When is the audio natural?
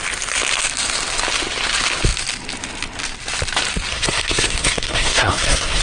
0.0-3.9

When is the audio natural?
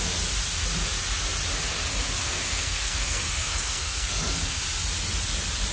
0.0-2.2; 4.6-5.7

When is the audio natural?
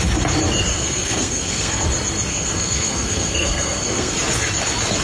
0.0-0.7; 1.8-2.3; 4.1-5.0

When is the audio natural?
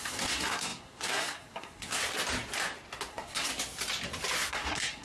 2.0-3.1; 3.5-4.5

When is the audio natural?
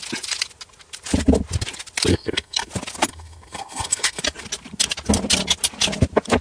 0.0-2.1; 2.7-3.1; 4.2-6.4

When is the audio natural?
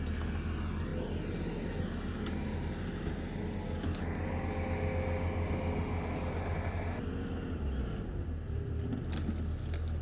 0.0-10.0